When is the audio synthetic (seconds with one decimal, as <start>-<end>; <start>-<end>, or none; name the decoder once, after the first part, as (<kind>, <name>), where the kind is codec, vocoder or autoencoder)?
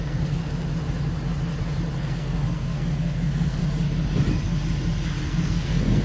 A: 0.0-0.4 (codec, SNAC); 2.0-3.6; 5.2-6.0